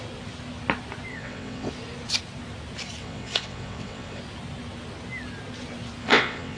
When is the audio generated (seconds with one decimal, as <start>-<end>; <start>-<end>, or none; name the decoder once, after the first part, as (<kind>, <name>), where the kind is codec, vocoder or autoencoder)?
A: 1.1-1.7 (vocoder, WaveNeXt); 3.0-4.2; 6.0-6.6

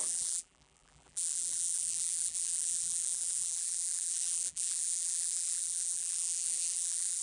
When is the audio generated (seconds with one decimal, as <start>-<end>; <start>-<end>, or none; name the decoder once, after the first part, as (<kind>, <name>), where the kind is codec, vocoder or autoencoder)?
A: 0.0-7.2 (vocoder, BigVGAN v2)